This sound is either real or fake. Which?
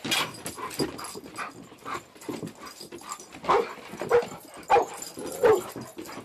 real